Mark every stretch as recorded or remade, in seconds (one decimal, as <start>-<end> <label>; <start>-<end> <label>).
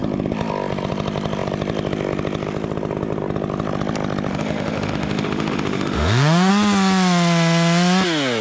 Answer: 0.0-4.3 recorded; 4.3-6.5 remade; 6.5-8.4 recorded